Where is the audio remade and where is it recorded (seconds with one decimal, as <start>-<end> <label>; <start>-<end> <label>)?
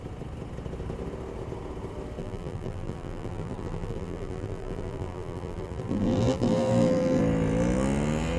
0.0-2.2 recorded; 2.2-7.2 remade; 7.2-8.4 recorded